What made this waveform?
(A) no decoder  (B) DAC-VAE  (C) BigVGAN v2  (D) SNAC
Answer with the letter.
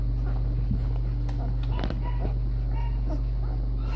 A